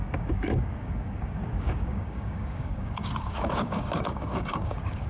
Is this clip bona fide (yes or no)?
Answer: no